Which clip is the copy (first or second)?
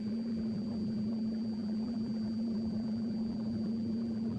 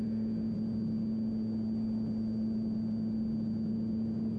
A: first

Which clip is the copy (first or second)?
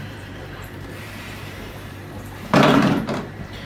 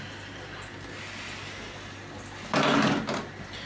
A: first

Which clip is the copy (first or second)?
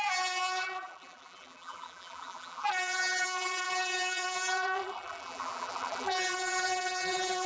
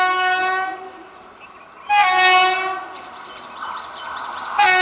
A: first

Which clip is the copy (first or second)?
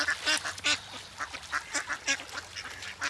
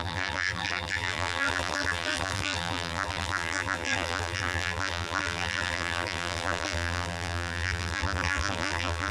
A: second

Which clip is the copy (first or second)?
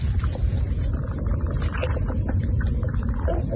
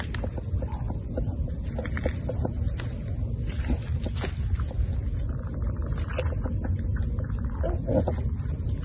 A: first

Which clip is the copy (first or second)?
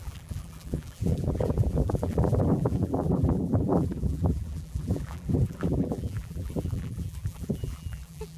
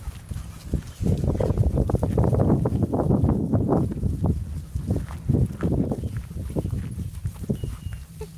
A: first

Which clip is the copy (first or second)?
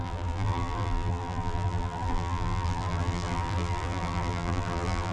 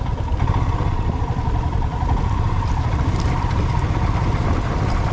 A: first